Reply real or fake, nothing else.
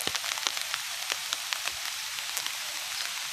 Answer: real